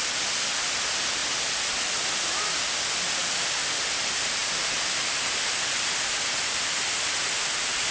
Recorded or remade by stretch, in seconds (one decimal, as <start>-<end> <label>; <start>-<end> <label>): 0.0-7.9 recorded